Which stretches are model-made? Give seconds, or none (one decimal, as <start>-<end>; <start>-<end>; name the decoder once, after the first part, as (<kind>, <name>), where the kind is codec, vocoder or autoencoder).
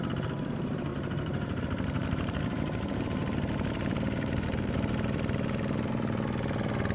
0.9-1.6 (vocoder, BigVGAN v2); 2.0-5.9